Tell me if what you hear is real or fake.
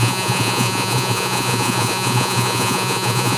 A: fake